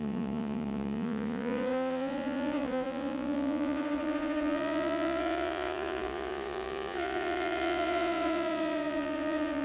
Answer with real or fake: fake